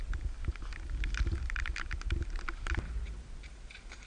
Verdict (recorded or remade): recorded